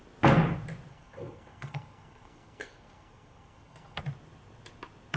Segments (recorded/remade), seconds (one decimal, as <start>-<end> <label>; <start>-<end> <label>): 0.0-0.9 recorded; 0.9-4.0 remade; 4.0-5.2 recorded